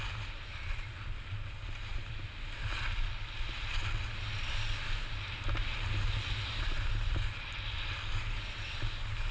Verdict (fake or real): real